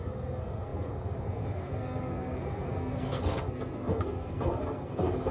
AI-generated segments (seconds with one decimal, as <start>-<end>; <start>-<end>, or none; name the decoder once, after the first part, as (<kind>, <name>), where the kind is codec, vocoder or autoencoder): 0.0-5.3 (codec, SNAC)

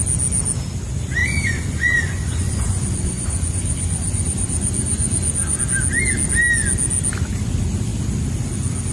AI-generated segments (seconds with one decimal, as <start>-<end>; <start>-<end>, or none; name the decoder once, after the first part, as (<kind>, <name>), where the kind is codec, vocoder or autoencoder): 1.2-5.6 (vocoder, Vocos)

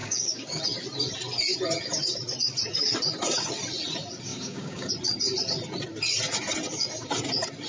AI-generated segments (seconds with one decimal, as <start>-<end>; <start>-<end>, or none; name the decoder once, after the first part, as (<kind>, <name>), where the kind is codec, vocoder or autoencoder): 0.0-0.6 (codec, DAC); 4.3-4.9

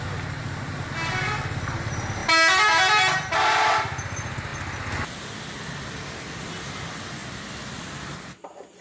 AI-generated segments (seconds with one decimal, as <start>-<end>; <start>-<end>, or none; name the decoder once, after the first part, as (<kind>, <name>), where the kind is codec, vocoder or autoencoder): none